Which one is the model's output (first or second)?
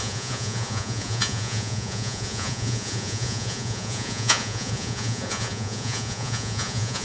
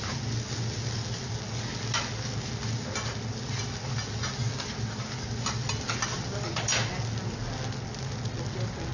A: first